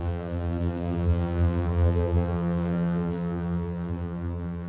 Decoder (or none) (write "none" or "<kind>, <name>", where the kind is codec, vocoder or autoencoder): vocoder, BigVGAN v2